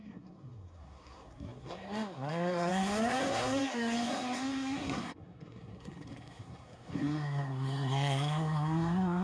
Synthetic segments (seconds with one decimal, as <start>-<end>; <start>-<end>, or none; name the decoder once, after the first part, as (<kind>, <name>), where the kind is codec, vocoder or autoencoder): 0.0-9.2 (codec, SNAC)